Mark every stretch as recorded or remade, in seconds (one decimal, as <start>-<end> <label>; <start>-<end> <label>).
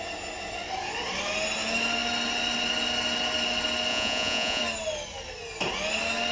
0.0-3.9 recorded; 3.9-4.6 remade; 4.6-6.3 recorded